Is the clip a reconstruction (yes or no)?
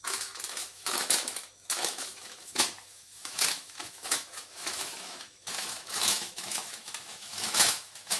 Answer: yes